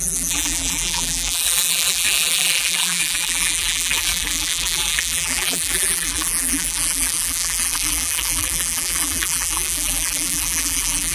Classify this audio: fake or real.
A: fake